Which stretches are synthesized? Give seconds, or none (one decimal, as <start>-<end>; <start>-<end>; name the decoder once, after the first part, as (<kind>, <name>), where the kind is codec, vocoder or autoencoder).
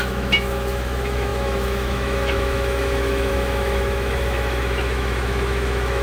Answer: 0.0-6.0 (autoencoder, DAC-VAE)